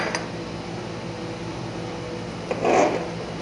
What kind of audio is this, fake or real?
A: real